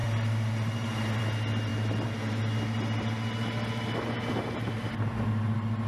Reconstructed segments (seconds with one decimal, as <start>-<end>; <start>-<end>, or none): none